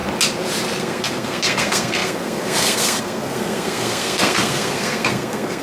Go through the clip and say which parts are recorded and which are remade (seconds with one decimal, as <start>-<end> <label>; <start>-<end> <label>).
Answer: 0.0-0.8 recorded; 0.8-5.6 remade